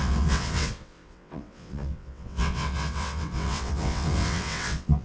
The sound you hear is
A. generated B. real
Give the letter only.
A